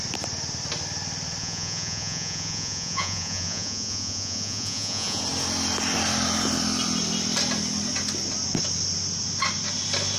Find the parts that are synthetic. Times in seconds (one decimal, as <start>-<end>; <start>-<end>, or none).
1.4-5.2